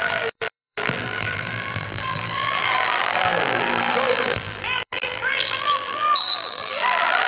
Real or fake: fake